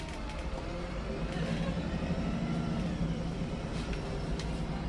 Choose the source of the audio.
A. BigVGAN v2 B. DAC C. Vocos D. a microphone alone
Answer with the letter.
D